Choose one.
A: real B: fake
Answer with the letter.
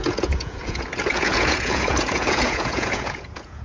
B